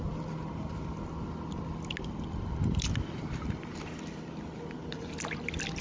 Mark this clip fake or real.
real